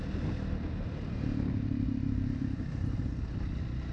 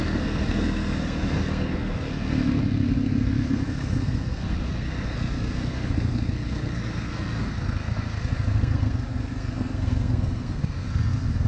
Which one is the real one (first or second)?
first